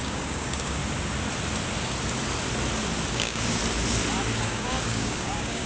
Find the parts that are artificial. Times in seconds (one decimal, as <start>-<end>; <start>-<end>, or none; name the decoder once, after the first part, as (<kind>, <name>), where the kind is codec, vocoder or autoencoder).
0.0-0.8 (codec, DAC); 3.1-3.6; 4.4-5.7